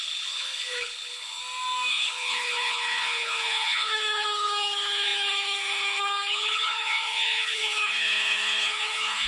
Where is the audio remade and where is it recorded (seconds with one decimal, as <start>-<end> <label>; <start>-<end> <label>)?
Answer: 0.0-1.4 remade; 1.4-1.9 recorded; 1.9-9.3 remade